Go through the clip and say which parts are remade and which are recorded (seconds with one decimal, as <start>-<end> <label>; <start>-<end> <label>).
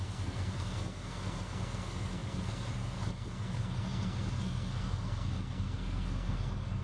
0.0-6.8 remade